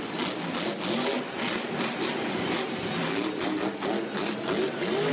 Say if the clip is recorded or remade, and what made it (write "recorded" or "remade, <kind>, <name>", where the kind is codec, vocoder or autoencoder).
recorded